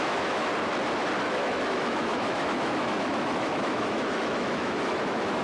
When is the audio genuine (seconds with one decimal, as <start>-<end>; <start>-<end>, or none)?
0.5-1.3